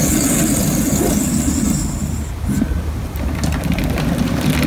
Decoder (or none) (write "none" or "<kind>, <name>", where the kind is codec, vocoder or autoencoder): none